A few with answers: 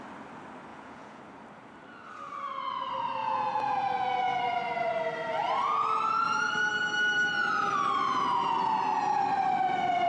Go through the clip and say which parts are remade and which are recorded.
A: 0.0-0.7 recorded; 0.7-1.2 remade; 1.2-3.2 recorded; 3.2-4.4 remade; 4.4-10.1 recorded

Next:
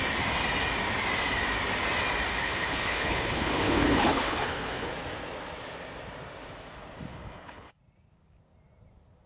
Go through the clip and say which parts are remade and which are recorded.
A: 0.0-2.3 recorded; 2.3-4.9 remade; 4.9-7.1 recorded; 7.1-7.8 remade; 7.8-9.3 recorded

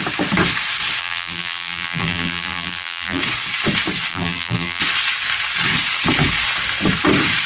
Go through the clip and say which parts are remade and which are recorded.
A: 0.0-1.0 recorded; 1.0-3.2 remade; 3.2-4.1 recorded; 4.1-4.8 remade; 4.8-7.5 recorded

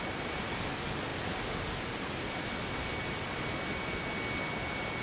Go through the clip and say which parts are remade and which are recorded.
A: 0.0-5.0 recorded

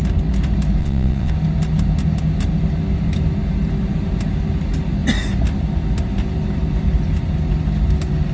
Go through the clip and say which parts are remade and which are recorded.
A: 0.0-0.8 recorded; 0.8-1.3 remade; 1.3-8.3 recorded

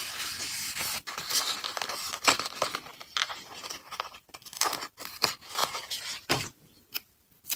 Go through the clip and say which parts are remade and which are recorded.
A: 0.0-2.9 recorded; 2.9-3.9 remade; 3.9-5.6 recorded; 5.6-6.4 remade; 6.4-7.6 recorded

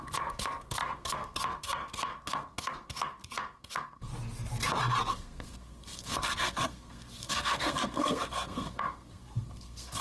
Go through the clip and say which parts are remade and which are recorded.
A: 0.0-4.1 remade; 4.1-5.1 recorded; 5.1-10.0 remade

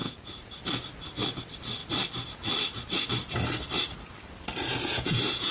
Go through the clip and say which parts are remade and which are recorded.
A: 0.0-0.6 remade; 0.6-4.7 recorded; 4.7-5.5 remade